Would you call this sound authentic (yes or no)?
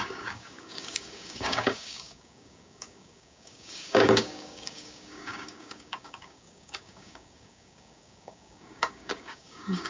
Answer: no